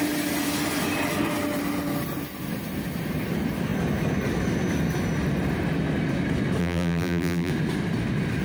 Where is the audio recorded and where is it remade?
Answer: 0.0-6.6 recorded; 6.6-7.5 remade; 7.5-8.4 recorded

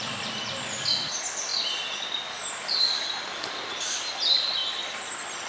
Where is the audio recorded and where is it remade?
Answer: 0.0-5.5 recorded